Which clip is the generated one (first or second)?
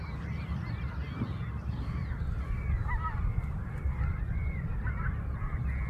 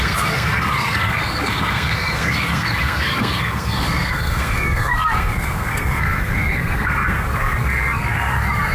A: second